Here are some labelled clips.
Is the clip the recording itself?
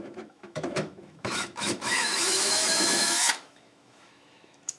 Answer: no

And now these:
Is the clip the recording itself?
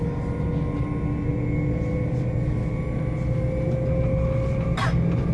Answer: yes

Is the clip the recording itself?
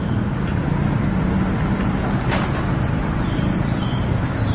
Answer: yes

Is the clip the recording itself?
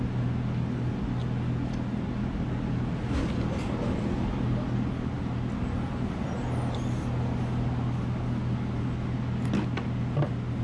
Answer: yes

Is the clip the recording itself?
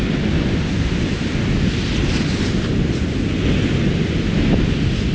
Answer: yes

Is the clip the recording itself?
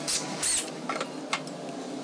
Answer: yes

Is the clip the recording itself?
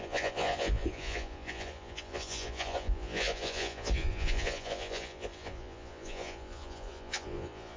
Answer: no